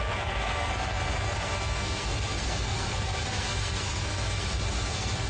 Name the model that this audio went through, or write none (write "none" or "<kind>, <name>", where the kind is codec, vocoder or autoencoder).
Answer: codec, SNAC